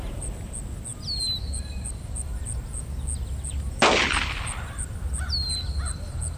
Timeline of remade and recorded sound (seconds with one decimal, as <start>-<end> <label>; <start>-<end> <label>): 0.0-6.4 recorded